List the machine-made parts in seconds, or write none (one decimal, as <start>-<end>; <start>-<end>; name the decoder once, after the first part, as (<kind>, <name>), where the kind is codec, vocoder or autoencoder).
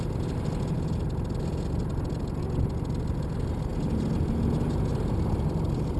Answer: none